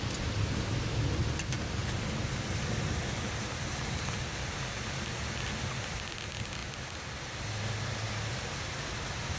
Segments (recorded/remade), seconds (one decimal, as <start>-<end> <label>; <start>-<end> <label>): 0.0-9.4 recorded